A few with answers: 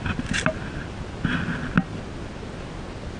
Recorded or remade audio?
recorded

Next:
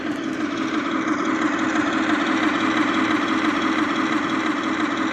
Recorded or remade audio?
recorded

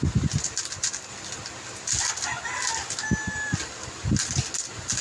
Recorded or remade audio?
recorded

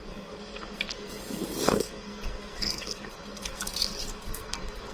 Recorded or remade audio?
remade